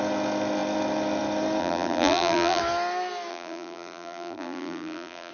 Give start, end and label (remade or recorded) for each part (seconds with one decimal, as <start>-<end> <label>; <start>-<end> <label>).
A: 0.0-1.6 recorded; 1.6-2.6 remade; 2.6-3.3 recorded; 3.3-5.3 remade

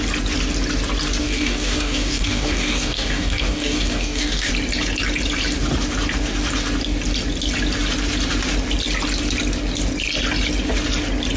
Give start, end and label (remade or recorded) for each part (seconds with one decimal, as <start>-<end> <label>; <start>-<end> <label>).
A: 0.0-1.2 recorded; 1.2-4.5 remade; 4.5-11.4 recorded